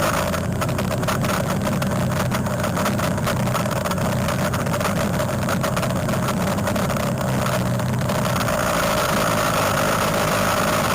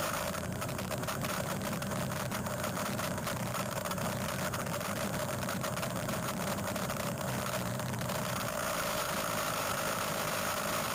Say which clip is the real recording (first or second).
first